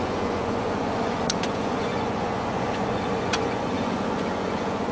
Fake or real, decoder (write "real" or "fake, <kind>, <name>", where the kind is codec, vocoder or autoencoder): fake, vocoder, Vocos